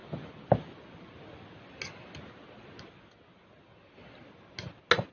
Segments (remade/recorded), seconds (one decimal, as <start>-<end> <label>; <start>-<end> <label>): 0.0-5.1 recorded